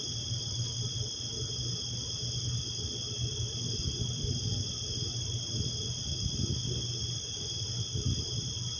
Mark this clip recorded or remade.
recorded